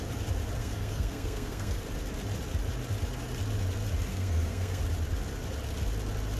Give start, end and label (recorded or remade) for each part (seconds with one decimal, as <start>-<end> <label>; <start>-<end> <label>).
0.0-0.6 recorded; 0.6-1.8 remade; 1.8-4.1 recorded; 4.1-4.8 remade; 4.8-6.4 recorded